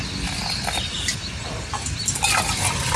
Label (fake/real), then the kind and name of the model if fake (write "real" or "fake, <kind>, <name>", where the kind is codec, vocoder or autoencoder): real